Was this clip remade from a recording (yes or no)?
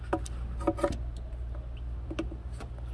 no